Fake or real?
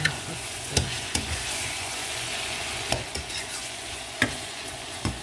fake